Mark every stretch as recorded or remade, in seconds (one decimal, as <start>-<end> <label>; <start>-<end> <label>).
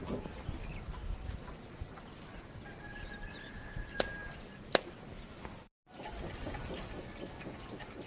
0.0-8.1 recorded